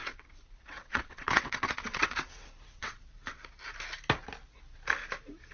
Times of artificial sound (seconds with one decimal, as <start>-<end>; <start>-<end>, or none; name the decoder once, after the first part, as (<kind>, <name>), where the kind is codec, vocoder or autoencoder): 0.0-3.3 (vocoder, WaveNeXt)